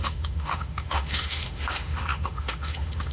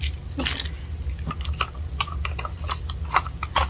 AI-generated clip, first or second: first